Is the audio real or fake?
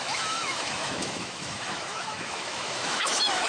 fake